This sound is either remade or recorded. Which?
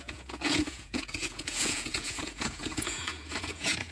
remade